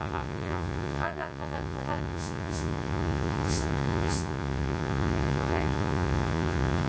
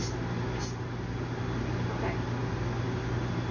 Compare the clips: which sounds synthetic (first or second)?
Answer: first